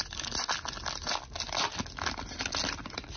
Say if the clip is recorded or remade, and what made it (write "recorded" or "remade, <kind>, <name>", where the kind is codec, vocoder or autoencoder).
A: recorded